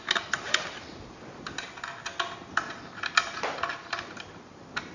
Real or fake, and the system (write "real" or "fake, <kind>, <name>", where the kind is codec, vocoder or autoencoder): real